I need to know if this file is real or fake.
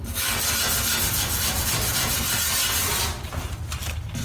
real